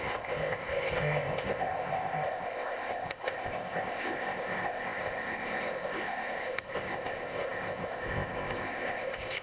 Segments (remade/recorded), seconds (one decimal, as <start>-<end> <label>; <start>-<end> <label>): 0.0-9.4 remade